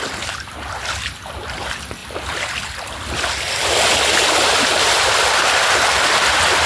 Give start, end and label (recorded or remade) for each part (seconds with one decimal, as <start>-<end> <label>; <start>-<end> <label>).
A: 0.0-2.0 recorded; 2.0-5.4 remade; 5.4-6.7 recorded